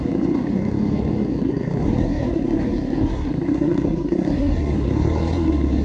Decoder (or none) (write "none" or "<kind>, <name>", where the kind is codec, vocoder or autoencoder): codec, SNAC